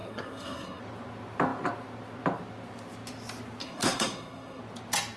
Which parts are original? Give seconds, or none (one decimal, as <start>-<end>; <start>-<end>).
0.8-3.6; 4.6-5.2